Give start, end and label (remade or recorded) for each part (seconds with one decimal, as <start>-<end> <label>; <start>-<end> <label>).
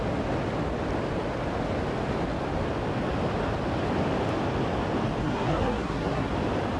0.0-5.2 recorded; 5.2-6.3 remade; 6.3-6.8 recorded